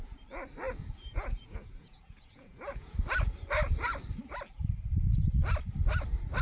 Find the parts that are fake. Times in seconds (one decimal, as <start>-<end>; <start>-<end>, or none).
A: 0.8-2.9

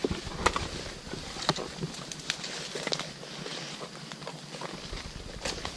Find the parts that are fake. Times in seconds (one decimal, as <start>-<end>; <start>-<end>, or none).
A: none

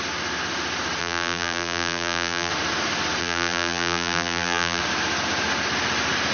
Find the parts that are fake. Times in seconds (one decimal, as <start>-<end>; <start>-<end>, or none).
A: 1.0-2.5; 3.2-4.8